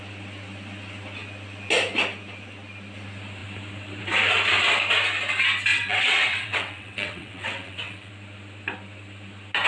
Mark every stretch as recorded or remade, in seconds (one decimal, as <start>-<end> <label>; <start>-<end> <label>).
0.0-5.7 recorded; 5.7-8.1 remade; 8.1-9.7 recorded